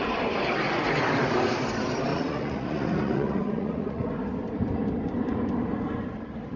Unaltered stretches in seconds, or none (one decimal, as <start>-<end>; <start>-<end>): 0.0-2.1; 4.1-6.6